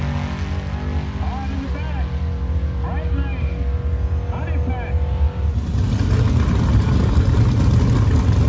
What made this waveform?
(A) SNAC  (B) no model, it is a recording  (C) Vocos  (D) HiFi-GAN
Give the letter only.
B